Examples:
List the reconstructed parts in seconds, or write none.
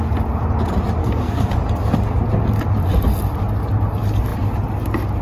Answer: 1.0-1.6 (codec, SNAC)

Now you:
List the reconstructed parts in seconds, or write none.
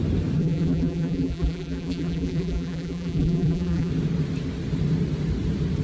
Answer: 0.4-3.9 (vocoder, BigVGAN v2)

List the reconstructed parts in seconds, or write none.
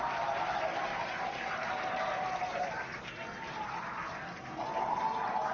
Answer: none